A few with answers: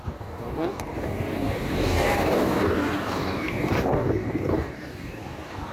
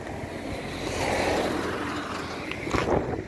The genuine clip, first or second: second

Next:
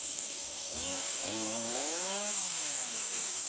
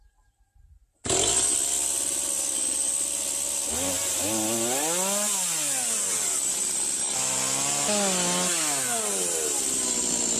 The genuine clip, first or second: second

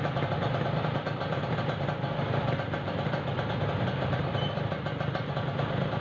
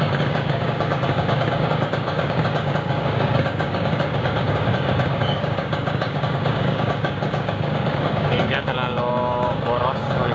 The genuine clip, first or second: first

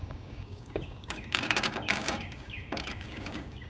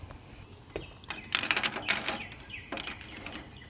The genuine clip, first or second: second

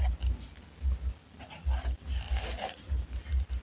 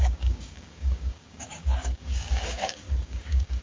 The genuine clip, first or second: first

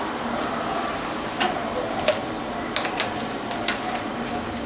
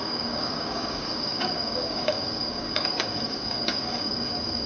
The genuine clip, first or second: first